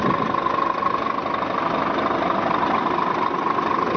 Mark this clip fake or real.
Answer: real